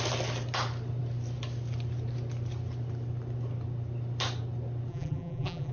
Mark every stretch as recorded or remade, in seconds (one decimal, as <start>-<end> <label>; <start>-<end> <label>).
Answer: 0.0-4.9 recorded; 4.9-5.7 remade